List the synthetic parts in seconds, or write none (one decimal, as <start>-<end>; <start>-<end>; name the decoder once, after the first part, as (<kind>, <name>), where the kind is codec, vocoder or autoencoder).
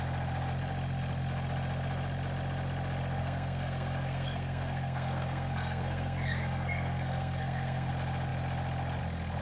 3.2-7.9 (codec, SNAC)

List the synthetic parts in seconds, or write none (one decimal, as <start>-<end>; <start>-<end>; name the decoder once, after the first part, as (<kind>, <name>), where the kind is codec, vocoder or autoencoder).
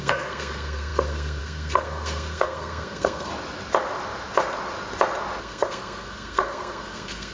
0.0-3.3 (codec, SNAC); 5.4-7.3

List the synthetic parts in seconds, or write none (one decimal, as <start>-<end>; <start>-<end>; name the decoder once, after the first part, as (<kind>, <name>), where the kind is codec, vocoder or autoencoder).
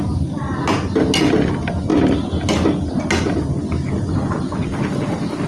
none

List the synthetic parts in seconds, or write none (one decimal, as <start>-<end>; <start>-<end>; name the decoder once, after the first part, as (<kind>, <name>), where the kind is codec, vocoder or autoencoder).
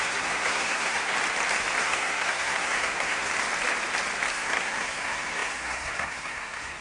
0.0-1.1 (codec, SNAC); 1.8-3.3; 4.3-6.8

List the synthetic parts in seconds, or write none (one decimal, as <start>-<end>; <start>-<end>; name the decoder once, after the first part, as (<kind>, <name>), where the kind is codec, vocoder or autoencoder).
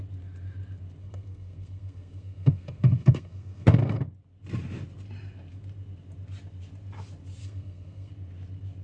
1.0-4.0 (codec, SNAC); 7.4-8.1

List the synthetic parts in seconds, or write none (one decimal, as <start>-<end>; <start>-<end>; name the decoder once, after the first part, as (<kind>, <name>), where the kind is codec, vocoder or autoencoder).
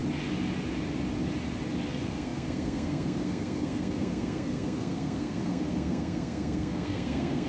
1.9-7.5 (codec, SNAC)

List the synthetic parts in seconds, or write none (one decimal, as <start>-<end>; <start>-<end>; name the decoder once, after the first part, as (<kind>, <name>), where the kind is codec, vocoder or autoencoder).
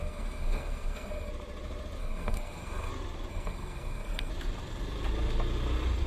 0.0-1.3 (codec, SNAC); 2.0-2.9; 3.3-4.3